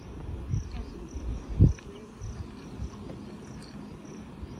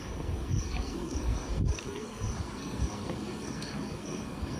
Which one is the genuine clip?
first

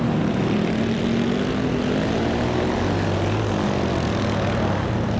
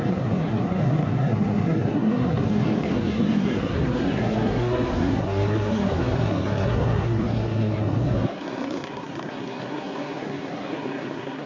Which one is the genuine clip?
first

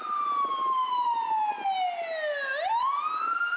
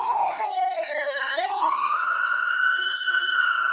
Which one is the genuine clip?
first